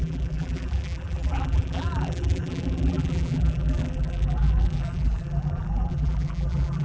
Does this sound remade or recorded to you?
remade